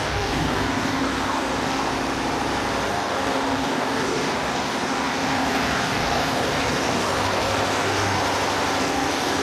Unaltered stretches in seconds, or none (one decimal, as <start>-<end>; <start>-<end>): 1.9-2.9; 8.2-8.8